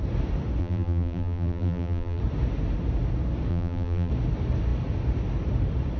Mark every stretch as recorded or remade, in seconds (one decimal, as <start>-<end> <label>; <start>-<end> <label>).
0.0-0.6 recorded; 0.6-2.2 remade; 2.2-3.5 recorded; 3.5-4.1 remade; 4.1-6.0 recorded